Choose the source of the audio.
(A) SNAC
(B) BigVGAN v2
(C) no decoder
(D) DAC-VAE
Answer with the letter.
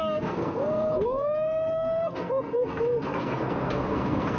A